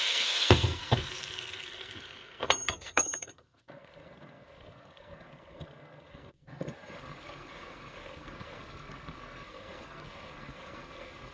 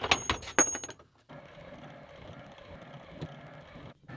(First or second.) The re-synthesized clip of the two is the first